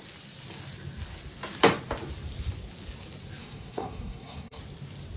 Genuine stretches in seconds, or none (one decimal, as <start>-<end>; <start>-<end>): 0.0-3.4; 4.6-5.2